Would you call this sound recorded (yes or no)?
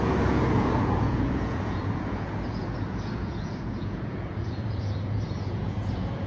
no